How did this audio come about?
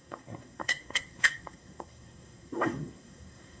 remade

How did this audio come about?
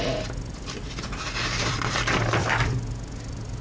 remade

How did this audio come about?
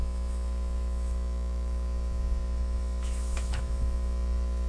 remade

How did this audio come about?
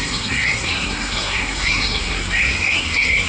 remade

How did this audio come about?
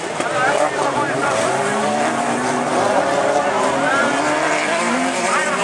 recorded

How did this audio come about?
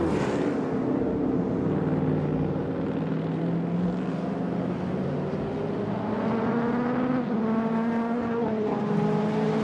recorded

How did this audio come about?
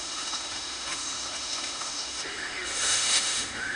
remade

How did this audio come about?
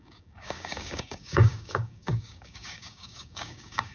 remade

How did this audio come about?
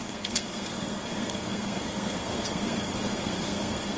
remade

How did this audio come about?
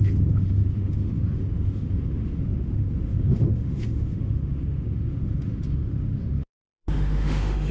remade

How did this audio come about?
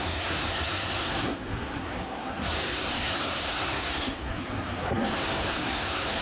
remade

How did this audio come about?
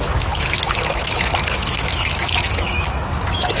remade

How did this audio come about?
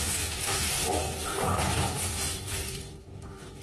remade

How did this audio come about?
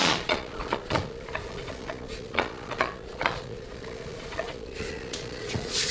remade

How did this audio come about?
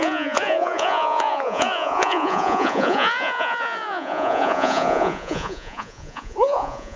remade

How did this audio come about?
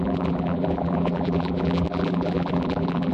remade